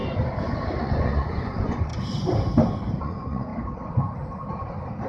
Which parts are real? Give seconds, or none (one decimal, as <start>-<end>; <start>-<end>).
0.0-0.8; 1.9-3.0; 3.5-5.1